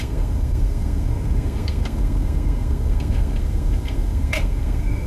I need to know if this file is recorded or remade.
remade